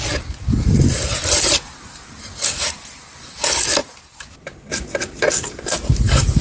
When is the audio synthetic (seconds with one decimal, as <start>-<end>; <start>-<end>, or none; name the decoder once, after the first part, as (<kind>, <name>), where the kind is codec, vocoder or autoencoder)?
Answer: none